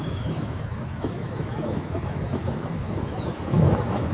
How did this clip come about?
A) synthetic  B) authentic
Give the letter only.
A